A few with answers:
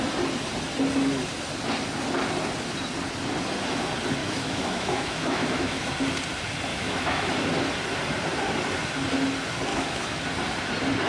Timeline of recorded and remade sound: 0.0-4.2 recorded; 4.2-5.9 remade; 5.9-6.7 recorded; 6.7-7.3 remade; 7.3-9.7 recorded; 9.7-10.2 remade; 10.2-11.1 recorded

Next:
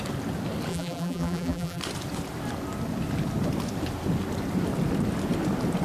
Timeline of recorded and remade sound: 0.0-0.7 recorded; 0.7-1.8 remade; 1.8-5.8 recorded

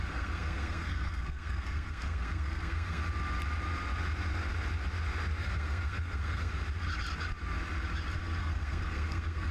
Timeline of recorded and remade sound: 0.0-3.0 remade; 3.0-5.4 recorded; 5.4-6.5 remade; 6.5-8.4 recorded; 8.4-9.5 remade

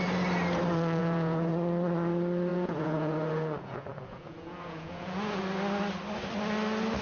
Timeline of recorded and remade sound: 0.0-1.0 recorded; 1.0-1.5 remade; 1.5-2.5 recorded; 2.5-5.4 remade; 5.4-7.0 recorded

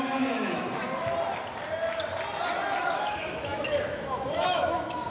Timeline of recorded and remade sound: 0.0-0.8 remade; 0.8-2.8 recorded; 2.8-5.1 remade

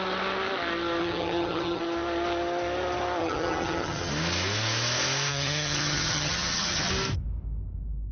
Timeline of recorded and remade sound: 0.0-1.0 recorded; 1.0-1.8 remade; 1.8-3.2 recorded; 3.2-4.1 remade; 4.1-5.3 recorded; 5.3-6.9 remade; 6.9-8.1 recorded